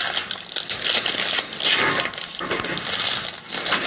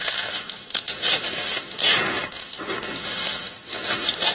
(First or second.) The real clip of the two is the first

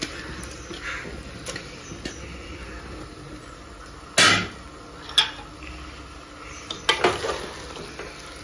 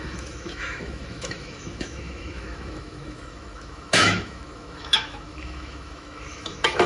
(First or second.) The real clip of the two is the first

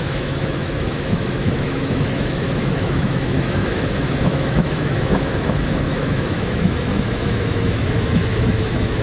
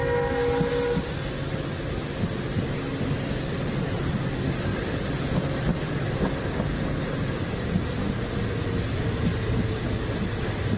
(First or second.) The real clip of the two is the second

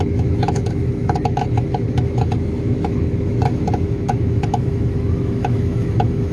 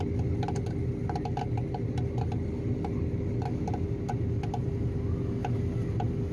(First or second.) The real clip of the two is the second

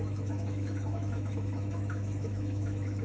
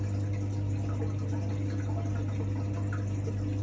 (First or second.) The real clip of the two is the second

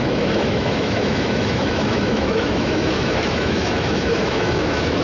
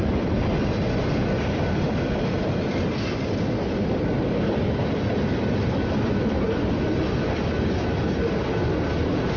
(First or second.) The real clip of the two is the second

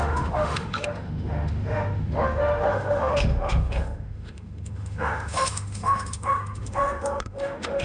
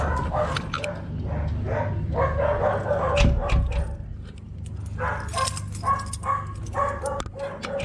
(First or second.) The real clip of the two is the second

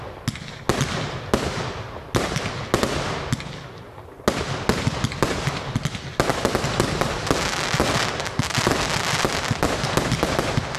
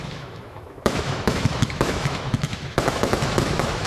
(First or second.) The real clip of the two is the first